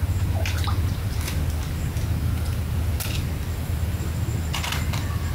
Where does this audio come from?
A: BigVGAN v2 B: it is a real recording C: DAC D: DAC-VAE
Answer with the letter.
B